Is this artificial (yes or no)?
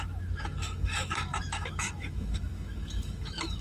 yes